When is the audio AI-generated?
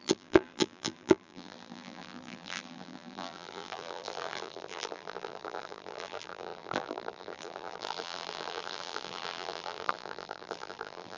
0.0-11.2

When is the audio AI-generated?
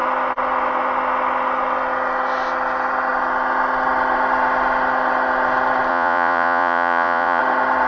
5.9-7.4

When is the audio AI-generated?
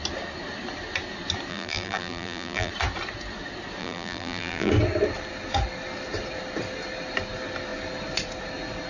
1.5-2.7; 3.8-4.7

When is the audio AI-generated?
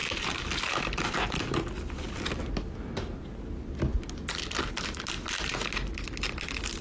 none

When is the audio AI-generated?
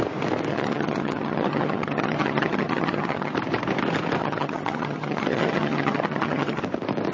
0.5-3.3; 4.2-6.6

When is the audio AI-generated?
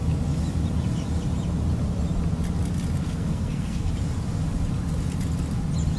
3.0-3.9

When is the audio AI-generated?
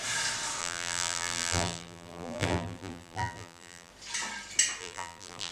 0.6-3.9; 4.8-5.5